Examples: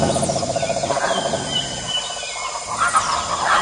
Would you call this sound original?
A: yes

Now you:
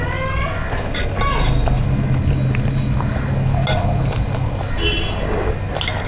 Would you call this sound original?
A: yes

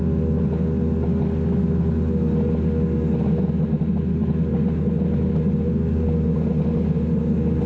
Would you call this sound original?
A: yes